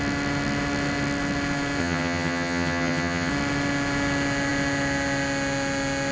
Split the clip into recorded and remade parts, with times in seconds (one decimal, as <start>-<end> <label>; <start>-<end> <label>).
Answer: 0.0-1.8 recorded; 1.8-3.3 remade; 3.3-6.1 recorded